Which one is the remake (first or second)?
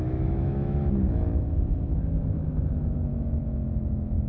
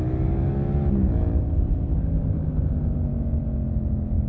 first